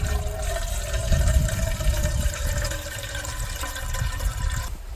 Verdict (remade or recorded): remade